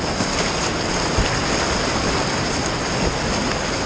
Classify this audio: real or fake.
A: real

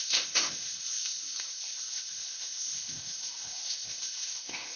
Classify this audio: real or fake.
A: fake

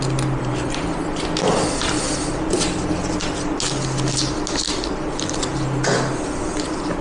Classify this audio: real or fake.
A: real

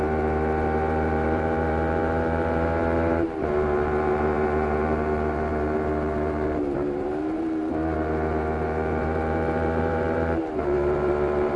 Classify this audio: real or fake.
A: fake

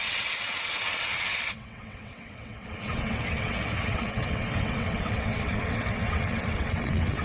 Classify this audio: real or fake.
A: fake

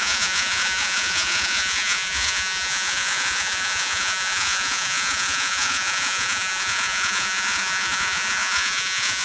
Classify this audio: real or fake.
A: fake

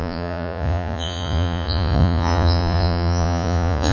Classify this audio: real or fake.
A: fake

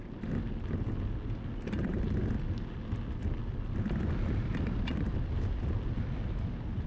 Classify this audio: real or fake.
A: real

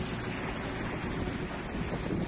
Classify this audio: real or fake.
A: real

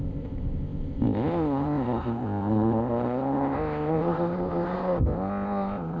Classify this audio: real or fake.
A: fake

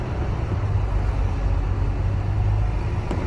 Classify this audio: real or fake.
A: real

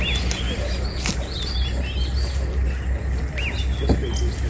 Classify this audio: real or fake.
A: real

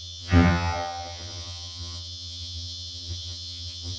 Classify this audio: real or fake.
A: fake